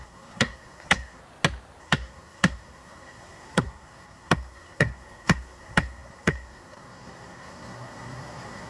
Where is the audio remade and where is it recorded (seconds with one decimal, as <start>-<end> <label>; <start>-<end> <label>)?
0.0-1.2 remade; 1.2-1.8 recorded; 1.8-8.7 remade